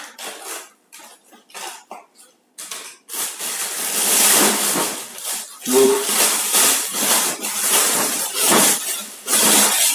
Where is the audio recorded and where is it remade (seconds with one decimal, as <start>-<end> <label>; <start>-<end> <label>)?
0.0-4.0 recorded; 4.0-8.6 remade; 8.6-9.9 recorded